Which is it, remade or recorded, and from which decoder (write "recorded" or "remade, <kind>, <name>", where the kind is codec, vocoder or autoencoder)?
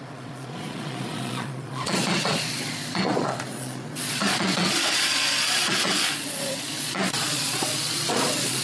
remade, vocoder, Vocos